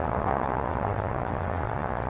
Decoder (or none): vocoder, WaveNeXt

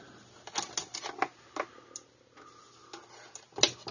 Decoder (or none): none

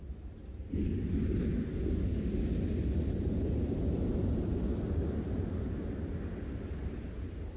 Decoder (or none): none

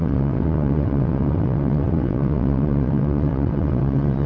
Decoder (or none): vocoder, WaveNeXt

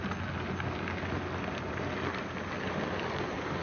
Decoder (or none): none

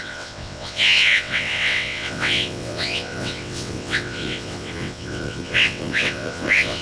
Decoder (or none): vocoder, WaveNeXt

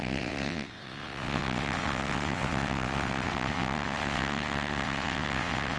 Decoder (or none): vocoder, WaveNeXt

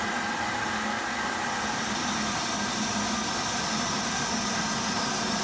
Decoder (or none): none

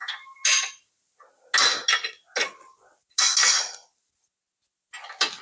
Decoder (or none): none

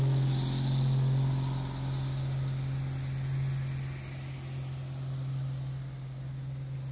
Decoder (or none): none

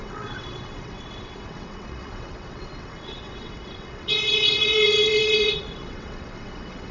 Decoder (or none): vocoder, WaveNeXt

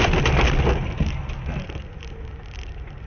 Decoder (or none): none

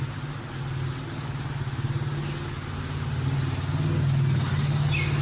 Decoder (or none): none